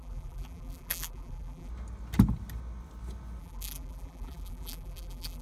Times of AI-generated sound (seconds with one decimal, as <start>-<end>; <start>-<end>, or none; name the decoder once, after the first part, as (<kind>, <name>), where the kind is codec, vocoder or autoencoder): 0.0-1.7 (vocoder, BigVGAN v2); 3.4-5.4